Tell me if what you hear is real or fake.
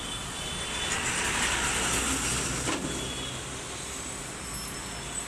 real